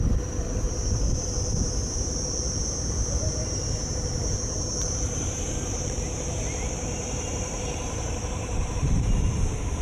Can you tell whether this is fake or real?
fake